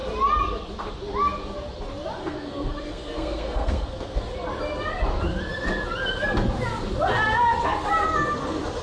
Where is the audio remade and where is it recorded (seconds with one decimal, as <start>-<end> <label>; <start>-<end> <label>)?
0.0-2.2 recorded; 2.2-4.2 remade; 4.2-8.8 recorded